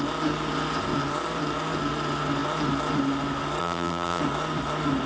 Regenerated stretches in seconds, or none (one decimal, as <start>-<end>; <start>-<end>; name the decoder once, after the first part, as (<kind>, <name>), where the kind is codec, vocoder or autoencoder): 3.6-4.2 (vocoder, BigVGAN v2)